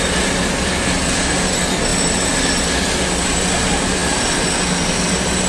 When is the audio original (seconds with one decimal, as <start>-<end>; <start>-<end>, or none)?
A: 0.0-5.5